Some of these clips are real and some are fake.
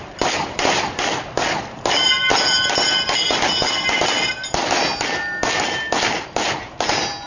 real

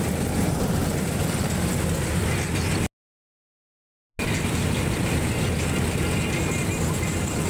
real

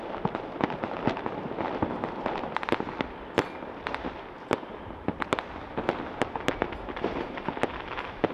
real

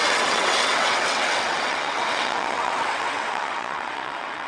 fake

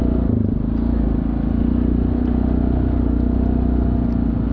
real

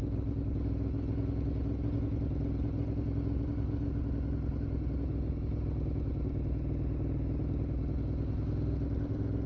real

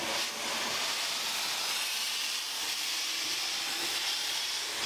fake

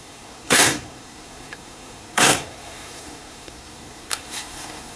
fake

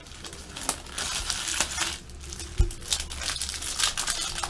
real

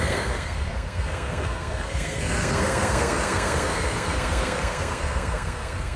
fake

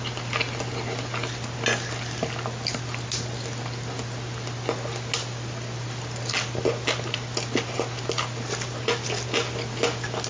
real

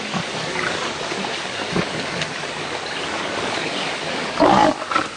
fake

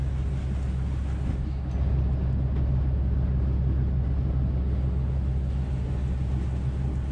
real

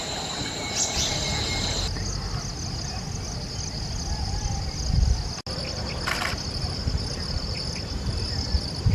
real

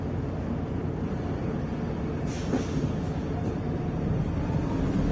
real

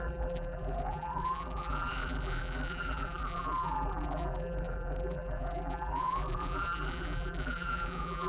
fake